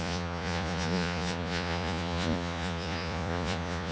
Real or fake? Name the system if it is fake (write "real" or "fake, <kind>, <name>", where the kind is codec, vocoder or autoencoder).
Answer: fake, vocoder, Vocos